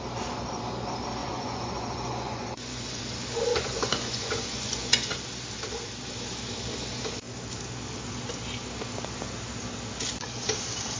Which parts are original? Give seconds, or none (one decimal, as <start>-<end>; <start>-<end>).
0.0-1.2; 3.0-3.5; 5.2-11.0